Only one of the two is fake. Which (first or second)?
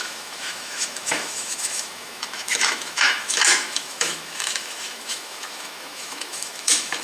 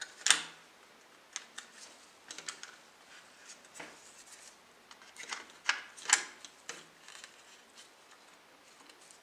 first